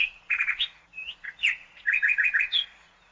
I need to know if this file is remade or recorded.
remade